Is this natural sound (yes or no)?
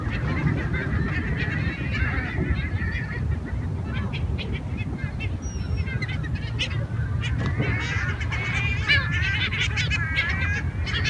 yes